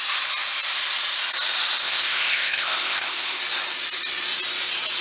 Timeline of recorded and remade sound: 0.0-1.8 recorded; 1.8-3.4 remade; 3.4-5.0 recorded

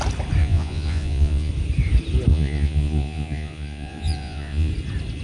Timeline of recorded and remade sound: 0.0-0.4 recorded; 0.4-1.5 remade; 1.5-2.3 recorded; 2.3-4.7 remade; 4.7-5.2 recorded

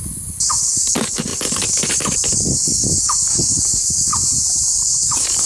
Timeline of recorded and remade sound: 0.0-4.1 remade; 4.1-4.7 recorded; 4.7-5.5 remade

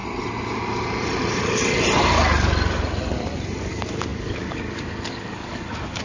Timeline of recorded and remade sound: 0.0-3.6 recorded; 3.6-6.0 remade

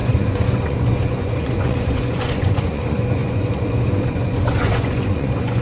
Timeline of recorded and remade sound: 0.0-5.6 remade

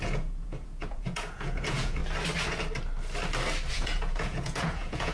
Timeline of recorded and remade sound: 0.0-2.0 remade; 2.0-3.7 recorded; 3.7-5.1 remade

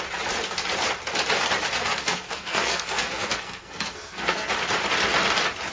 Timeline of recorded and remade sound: 0.0-1.8 recorded; 1.8-4.5 remade; 4.5-5.7 recorded